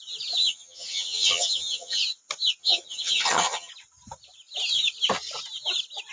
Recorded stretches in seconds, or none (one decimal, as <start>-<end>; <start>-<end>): 0.0-0.4; 2.0-2.6; 3.7-6.1